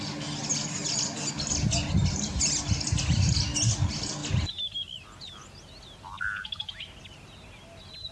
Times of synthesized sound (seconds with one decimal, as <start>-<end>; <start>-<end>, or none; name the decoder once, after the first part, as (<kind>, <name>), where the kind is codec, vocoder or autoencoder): none